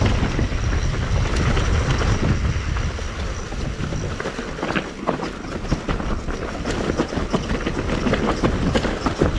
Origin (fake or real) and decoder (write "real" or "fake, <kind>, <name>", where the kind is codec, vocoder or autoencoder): real